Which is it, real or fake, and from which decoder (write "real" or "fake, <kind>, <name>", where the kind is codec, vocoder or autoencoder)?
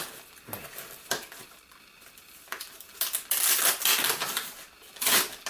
real